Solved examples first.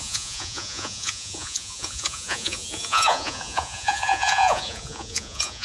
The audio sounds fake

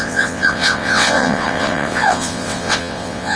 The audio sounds fake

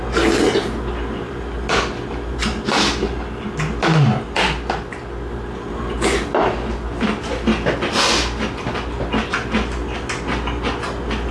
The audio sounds real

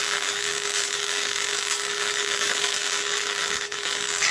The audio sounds fake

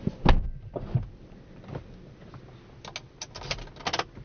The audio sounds real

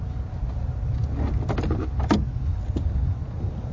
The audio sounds real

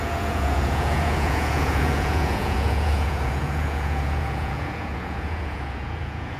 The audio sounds fake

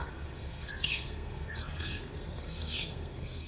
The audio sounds fake